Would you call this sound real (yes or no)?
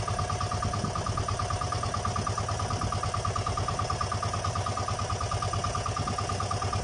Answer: yes